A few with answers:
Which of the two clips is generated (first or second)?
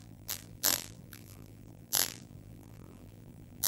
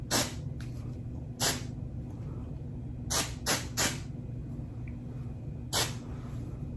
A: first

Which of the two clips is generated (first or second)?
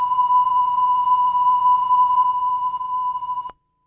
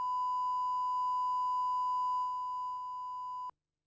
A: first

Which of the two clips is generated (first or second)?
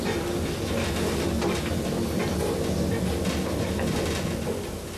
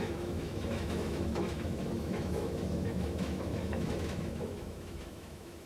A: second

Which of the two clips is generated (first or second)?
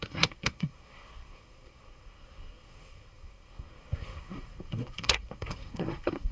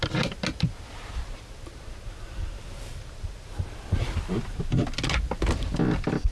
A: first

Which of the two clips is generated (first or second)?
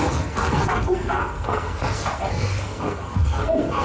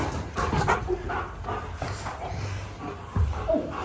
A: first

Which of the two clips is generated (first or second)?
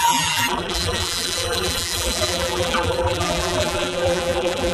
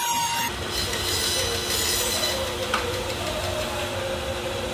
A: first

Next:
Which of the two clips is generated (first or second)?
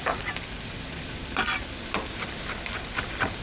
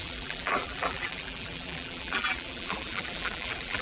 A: second